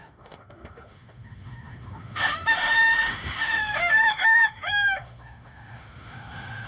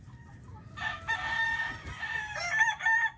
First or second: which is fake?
first